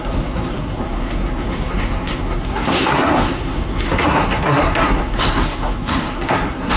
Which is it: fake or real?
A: fake